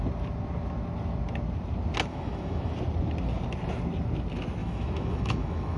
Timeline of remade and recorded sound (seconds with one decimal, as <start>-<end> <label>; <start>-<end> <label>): 0.0-2.1 recorded; 2.1-2.7 remade; 2.7-4.6 recorded; 4.6-5.8 remade

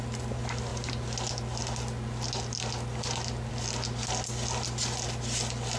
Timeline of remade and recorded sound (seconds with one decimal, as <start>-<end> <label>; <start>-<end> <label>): 0.0-5.8 recorded

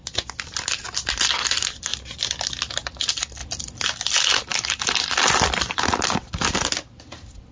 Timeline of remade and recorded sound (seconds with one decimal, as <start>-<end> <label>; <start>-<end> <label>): 0.0-3.4 recorded; 3.4-3.9 remade; 3.9-4.5 recorded; 4.5-6.1 remade; 6.1-7.5 recorded

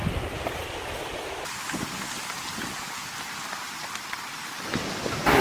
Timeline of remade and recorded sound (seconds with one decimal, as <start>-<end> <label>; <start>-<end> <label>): 0.0-5.4 recorded

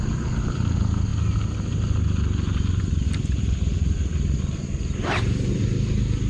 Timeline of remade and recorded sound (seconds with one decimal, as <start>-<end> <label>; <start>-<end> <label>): 0.0-6.3 recorded

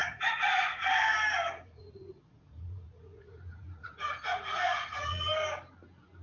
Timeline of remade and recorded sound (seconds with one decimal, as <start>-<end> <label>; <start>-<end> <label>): 0.0-0.8 remade; 0.8-1.6 recorded; 1.6-5.3 remade; 5.3-6.2 recorded

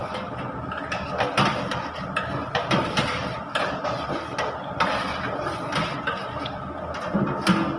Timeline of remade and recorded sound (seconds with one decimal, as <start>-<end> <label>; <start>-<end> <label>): 0.0-7.8 recorded

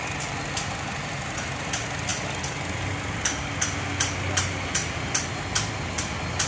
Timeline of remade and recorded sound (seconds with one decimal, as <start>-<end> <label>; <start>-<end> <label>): 0.0-6.5 recorded